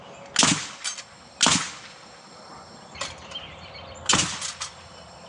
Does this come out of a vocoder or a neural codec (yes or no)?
no